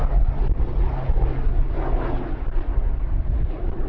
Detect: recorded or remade recorded